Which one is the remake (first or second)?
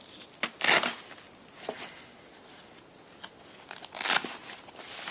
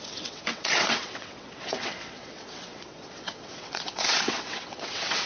second